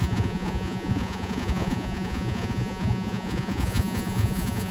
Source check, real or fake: fake